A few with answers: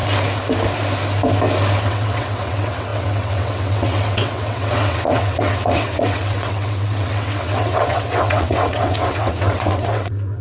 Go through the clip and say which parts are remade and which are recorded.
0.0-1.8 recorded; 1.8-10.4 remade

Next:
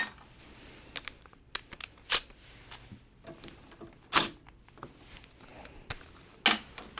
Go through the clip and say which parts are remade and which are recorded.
0.0-7.0 recorded

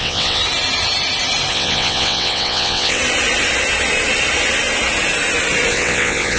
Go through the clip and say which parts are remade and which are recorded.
0.0-0.4 remade; 0.4-1.5 recorded; 1.5-3.0 remade; 3.0-5.7 recorded; 5.7-6.4 remade